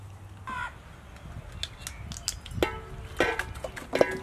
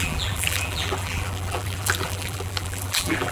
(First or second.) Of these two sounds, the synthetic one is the second